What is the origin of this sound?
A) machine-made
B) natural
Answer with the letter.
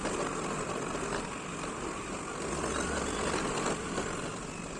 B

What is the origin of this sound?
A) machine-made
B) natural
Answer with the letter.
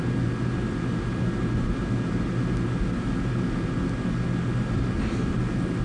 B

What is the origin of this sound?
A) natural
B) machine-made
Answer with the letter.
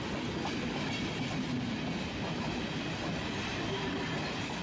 A